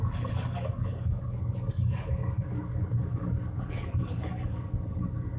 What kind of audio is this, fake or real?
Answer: fake